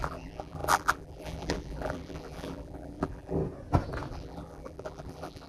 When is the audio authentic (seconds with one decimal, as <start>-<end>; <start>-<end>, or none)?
3.4-4.1